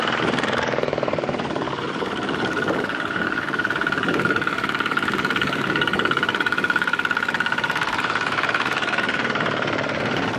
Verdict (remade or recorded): remade